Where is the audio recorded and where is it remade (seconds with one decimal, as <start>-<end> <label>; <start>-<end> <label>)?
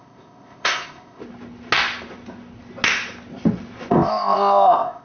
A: 0.0-1.2 remade; 1.2-3.9 recorded; 3.9-5.0 remade